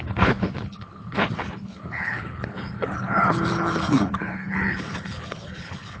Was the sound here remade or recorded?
remade